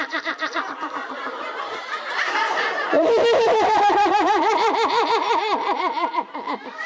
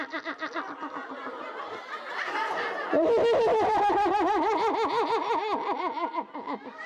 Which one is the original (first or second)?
second